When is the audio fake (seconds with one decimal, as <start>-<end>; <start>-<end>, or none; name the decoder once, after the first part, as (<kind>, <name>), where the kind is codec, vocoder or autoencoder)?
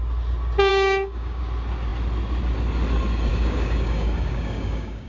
0.7-1.4 (codec, DAC); 3.3-5.1